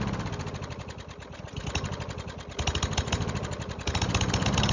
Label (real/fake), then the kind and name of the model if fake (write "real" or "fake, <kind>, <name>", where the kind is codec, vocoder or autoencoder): real